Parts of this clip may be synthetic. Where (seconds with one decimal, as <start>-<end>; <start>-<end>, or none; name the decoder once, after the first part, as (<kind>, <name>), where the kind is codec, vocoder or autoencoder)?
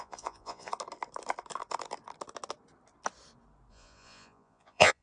0.0-0.7 (vocoder, Vocos); 3.7-5.0